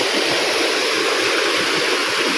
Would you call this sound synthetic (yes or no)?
no